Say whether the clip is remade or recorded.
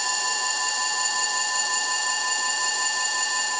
recorded